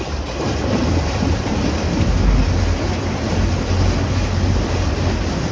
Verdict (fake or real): real